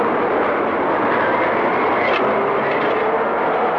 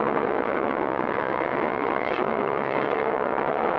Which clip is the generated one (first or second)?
second